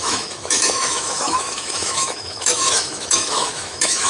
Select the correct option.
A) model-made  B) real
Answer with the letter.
A